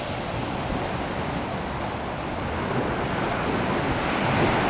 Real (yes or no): yes